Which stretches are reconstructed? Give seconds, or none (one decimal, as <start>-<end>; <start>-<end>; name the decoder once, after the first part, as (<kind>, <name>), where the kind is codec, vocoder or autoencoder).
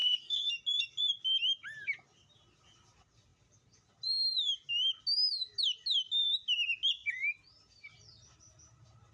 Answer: 0.0-0.5 (codec, SNAC)